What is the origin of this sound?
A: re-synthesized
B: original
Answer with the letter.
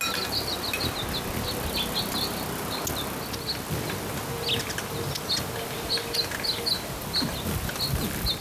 B